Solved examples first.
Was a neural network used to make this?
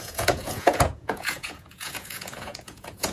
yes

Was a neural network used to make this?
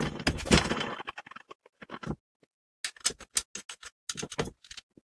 no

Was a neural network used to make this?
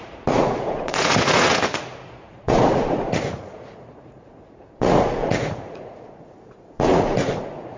yes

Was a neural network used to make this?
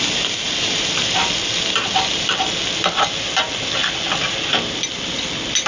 no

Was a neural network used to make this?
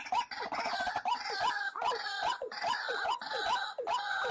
yes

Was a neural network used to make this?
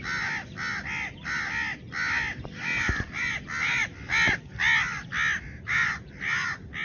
no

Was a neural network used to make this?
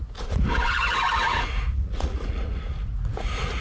yes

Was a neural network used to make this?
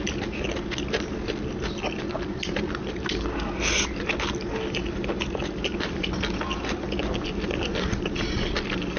no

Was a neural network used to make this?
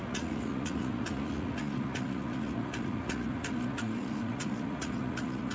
yes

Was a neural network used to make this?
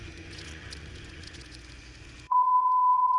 yes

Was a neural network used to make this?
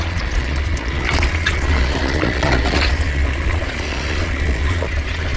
yes